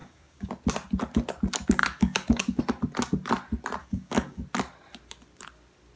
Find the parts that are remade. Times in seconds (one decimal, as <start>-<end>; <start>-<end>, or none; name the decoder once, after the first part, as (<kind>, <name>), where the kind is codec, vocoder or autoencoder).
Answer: 0.0-0.5 (codec, DAC); 1.8-2.6; 3.8-4.4